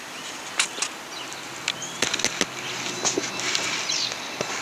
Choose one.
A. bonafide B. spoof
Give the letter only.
A